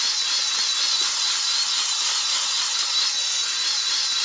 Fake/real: real